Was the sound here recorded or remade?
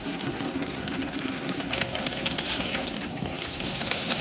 remade